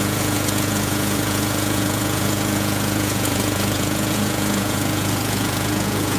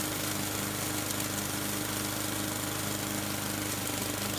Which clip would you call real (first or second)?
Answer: second